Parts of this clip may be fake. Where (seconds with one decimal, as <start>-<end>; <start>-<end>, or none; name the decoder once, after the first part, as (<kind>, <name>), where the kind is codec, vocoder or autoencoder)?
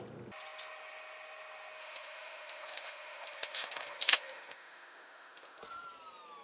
1.8-5.6 (autoencoder, DAC-VAE)